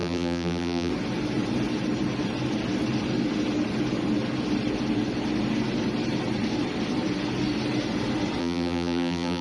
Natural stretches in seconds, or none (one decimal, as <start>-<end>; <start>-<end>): 0.9-8.4